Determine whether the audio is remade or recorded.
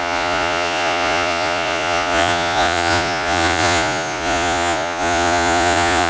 remade